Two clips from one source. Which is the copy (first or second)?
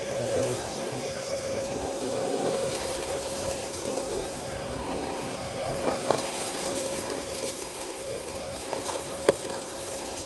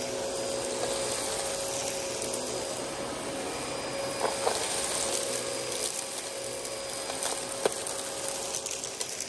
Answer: first